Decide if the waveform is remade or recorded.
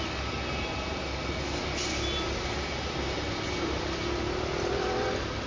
recorded